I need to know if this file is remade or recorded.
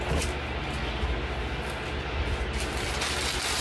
recorded